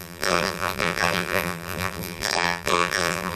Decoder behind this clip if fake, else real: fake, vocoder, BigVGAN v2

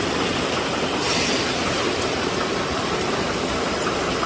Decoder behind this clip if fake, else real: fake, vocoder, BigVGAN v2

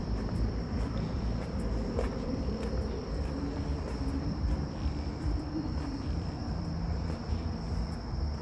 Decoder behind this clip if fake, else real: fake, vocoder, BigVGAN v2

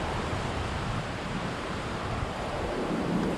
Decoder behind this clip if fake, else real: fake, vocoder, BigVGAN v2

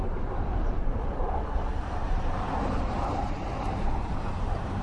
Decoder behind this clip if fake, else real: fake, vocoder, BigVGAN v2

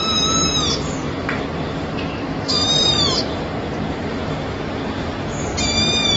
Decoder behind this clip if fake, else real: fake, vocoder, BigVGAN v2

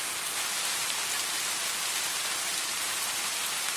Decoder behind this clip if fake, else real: real